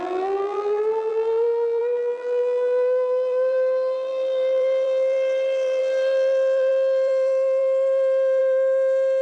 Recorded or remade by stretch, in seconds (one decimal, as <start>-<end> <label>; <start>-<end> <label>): 0.0-9.2 remade

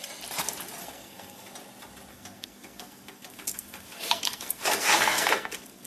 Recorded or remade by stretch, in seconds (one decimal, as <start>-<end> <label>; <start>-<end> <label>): 0.0-0.8 recorded; 0.8-1.5 remade; 1.5-2.1 recorded; 2.1-5.9 remade

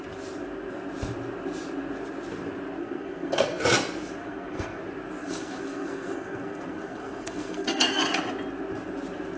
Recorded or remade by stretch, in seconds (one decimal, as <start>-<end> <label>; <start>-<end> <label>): 0.0-2.8 recorded; 2.8-3.6 remade; 3.6-4.2 recorded; 4.2-4.8 remade; 4.8-5.2 recorded; 5.2-8.0 remade; 8.0-9.4 recorded

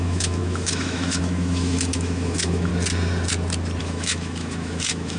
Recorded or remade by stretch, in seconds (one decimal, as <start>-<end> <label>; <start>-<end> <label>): 0.0-2.7 remade; 2.7-3.8 recorded; 3.8-5.2 remade

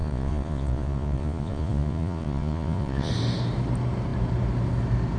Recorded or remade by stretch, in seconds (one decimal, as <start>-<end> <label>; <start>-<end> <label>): 0.0-3.1 remade; 3.1-5.2 recorded